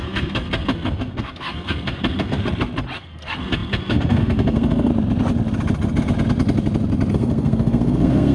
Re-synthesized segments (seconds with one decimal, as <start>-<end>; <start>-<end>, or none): 0.0-2.4; 3.0-4.9; 7.1-8.3

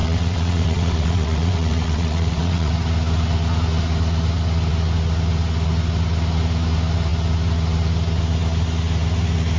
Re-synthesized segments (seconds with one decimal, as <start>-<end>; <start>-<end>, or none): 0.0-2.7

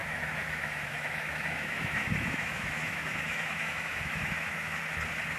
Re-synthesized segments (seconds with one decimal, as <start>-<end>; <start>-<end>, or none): 0.0-4.8